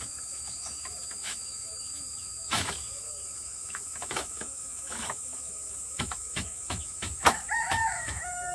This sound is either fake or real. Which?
fake